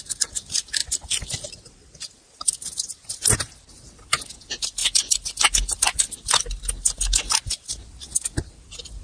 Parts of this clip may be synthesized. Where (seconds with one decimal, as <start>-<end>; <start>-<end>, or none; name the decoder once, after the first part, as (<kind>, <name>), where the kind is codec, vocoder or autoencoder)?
0.8-1.3 (vocoder, BigVGAN v2); 4.8-6.7